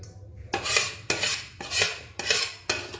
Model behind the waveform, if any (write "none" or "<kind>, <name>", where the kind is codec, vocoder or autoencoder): none